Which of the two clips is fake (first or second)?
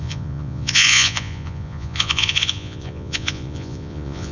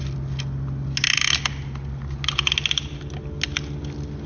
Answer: first